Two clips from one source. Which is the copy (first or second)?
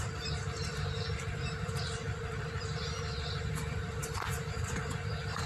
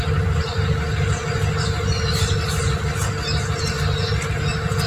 first